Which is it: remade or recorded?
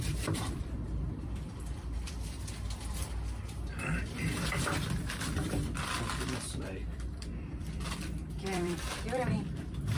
remade